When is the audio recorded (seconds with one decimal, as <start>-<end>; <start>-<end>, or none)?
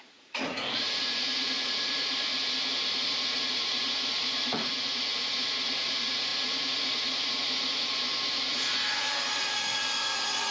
2.3-3.0